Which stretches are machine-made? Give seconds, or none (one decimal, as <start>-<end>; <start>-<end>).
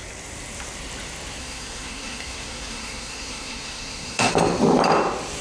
1.4-4.3